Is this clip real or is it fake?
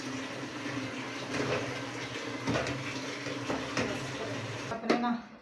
real